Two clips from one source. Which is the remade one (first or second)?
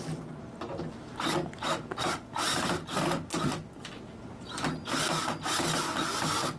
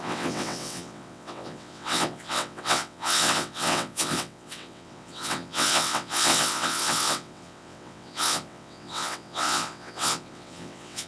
second